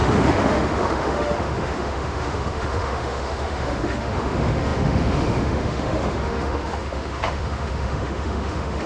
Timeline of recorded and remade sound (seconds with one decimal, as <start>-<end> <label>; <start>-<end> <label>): 0.0-8.9 remade